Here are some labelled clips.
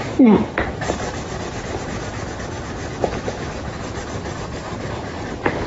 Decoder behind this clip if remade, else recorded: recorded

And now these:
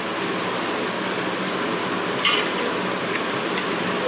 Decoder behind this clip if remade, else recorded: recorded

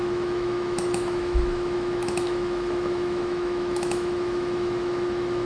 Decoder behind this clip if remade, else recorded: remade, autoencoder, DAC-VAE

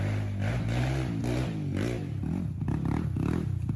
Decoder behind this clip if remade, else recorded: recorded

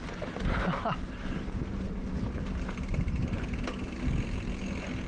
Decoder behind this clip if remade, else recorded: recorded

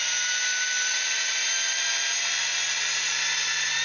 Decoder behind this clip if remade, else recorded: recorded